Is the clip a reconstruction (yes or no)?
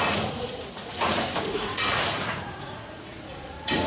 yes